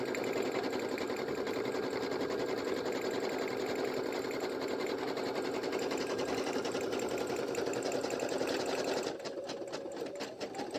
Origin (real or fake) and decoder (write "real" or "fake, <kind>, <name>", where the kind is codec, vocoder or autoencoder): real